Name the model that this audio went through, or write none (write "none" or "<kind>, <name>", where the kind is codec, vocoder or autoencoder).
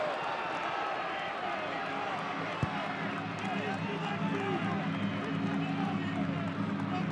none